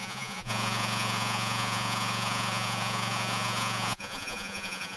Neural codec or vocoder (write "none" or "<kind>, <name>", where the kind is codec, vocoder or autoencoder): vocoder, Vocos